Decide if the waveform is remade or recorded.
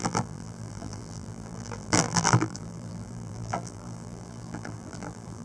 remade